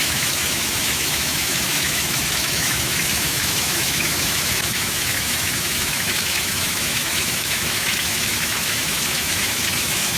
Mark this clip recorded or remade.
remade